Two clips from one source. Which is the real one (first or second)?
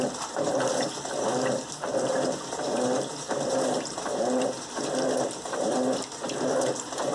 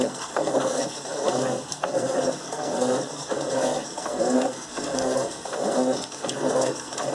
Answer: first